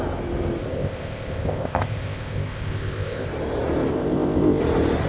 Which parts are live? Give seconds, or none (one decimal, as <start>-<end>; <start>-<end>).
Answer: 0.0-0.6; 3.3-3.9; 4.6-5.1